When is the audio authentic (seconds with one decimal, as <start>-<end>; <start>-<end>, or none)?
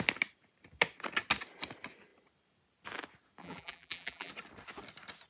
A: 0.0-3.4; 4.3-5.3